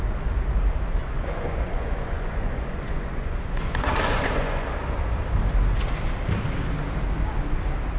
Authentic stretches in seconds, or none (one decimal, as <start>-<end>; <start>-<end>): 0.0-1.0; 4.7-8.0